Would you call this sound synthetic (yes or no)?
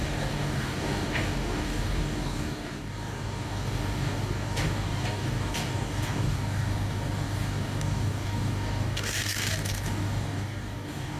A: yes